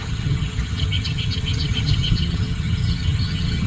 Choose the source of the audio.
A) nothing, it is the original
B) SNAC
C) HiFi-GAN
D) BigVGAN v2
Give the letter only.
C